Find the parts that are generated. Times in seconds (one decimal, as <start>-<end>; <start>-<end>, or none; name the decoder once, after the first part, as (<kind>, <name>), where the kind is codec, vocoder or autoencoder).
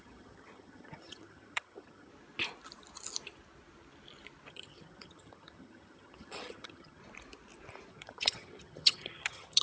0.0-2.1 (vocoder, HiFi-GAN); 4.5-7.0; 7.9-9.6